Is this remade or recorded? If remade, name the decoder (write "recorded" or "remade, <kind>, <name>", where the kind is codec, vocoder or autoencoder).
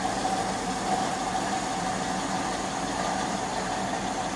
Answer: recorded